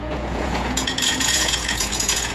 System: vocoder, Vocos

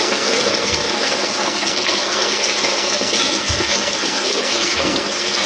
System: codec, SNAC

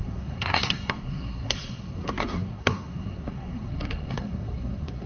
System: codec, SNAC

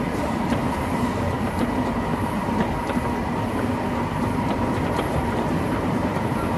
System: none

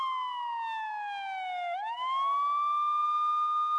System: none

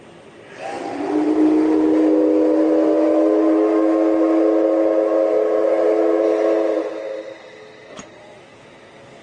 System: none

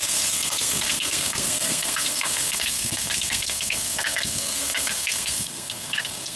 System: codec, SNAC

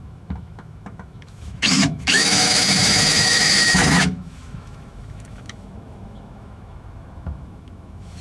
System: autoencoder, DAC-VAE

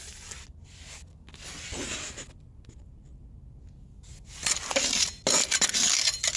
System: none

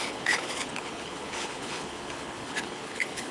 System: codec, HILCodec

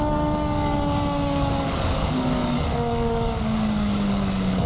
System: codec, DAC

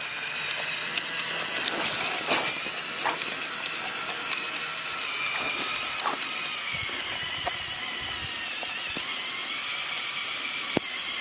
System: none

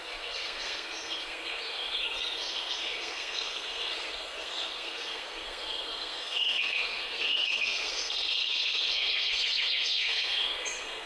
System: codec, SNAC